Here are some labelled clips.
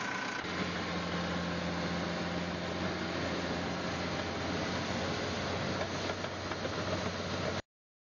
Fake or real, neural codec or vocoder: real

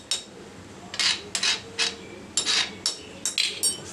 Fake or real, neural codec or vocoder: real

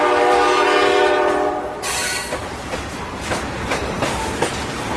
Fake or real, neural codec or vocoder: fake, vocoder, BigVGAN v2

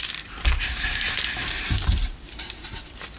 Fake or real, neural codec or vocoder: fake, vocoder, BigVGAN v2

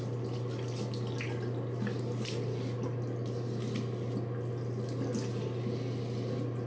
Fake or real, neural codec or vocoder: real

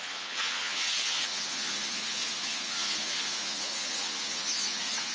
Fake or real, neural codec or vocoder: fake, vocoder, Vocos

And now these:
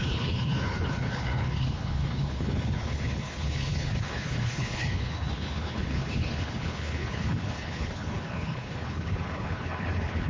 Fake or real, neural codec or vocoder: fake, codec, HILCodec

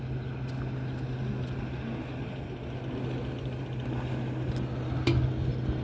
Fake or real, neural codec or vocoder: real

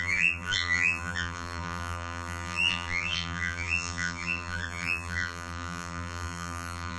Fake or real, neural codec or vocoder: fake, vocoder, BigVGAN v2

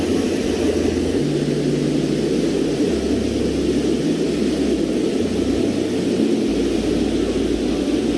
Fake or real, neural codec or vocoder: real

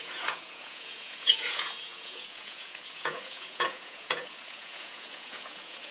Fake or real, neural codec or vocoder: fake, vocoder, Vocos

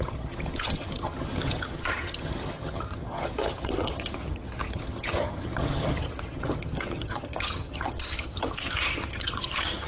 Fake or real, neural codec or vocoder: fake, vocoder, HiFi-GAN